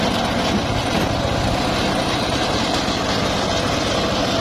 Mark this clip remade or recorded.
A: recorded